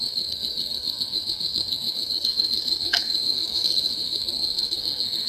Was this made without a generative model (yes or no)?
no